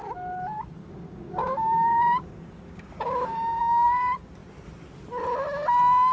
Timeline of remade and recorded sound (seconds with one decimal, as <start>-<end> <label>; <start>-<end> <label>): 0.0-0.8 recorded; 0.8-3.6 remade; 3.6-6.1 recorded